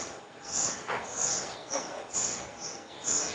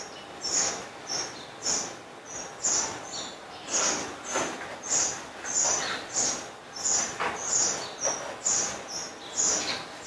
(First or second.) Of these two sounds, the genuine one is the second